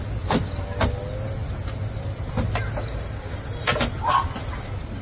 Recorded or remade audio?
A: recorded